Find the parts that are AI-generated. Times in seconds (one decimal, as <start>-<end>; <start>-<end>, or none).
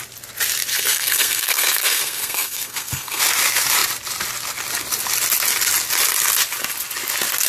0.7-3.2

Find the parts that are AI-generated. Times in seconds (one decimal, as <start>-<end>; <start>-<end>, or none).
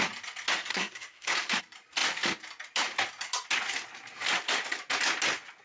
0.7-1.6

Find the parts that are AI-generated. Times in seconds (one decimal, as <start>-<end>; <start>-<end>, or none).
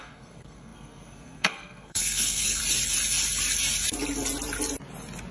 0.0-2.6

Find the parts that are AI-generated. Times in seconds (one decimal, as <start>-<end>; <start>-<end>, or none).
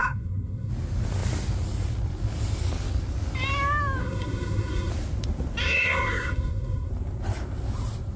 0.0-0.7; 4.0-4.9; 5.6-6.9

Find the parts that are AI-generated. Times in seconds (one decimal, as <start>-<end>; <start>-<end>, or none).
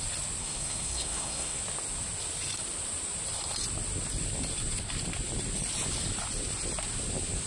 0.4-1.6